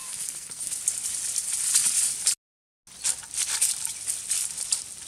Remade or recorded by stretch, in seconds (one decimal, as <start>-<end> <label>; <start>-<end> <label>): 0.0-0.8 remade; 0.8-5.1 recorded